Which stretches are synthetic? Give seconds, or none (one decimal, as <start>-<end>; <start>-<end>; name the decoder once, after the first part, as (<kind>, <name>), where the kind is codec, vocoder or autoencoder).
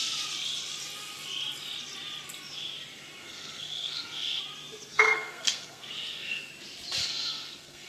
3.2-4.4 (codec, SNAC); 4.9-6.5; 7.0-7.9